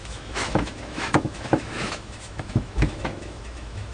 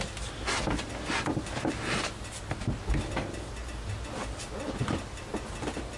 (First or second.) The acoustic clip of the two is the second